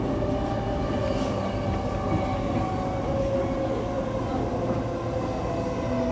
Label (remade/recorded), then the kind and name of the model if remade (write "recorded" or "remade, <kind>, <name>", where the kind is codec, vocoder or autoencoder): recorded